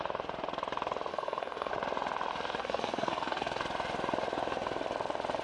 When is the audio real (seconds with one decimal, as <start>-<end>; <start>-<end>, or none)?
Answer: 0.0-1.1; 1.7-2.6; 3.6-5.4